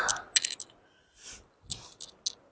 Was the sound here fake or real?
real